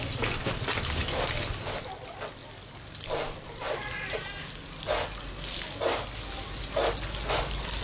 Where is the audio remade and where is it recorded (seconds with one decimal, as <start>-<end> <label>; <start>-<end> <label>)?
0.0-7.8 recorded

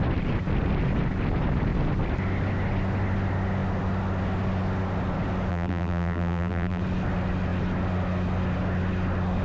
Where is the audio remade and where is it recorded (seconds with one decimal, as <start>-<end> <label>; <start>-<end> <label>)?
0.0-5.5 recorded; 5.5-6.8 remade; 6.8-9.4 recorded

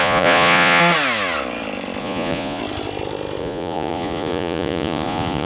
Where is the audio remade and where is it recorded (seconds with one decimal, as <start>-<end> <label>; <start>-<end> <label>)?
0.0-0.8 remade; 0.8-2.0 recorded; 2.0-2.6 remade; 2.6-3.4 recorded; 3.4-5.4 remade

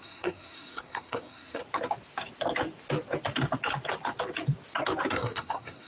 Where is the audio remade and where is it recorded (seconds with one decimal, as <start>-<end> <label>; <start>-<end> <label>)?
0.0-1.6 remade; 1.6-5.1 recorded; 5.1-5.9 remade

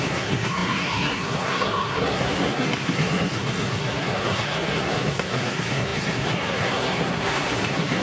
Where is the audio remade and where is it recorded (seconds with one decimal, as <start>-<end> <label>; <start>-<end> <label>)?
0.0-8.0 remade

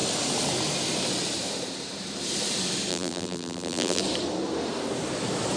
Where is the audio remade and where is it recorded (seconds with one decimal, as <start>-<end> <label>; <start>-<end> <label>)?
0.0-2.9 recorded; 2.9-4.0 remade; 4.0-5.6 recorded

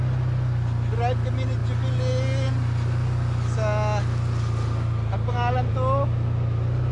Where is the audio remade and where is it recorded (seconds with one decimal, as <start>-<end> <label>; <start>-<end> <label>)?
0.0-6.9 recorded

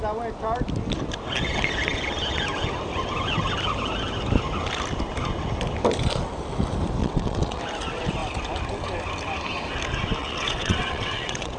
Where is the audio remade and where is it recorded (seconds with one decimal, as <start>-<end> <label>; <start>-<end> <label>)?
0.0-7.0 recorded; 7.0-7.6 remade; 7.6-10.2 recorded; 10.2-11.6 remade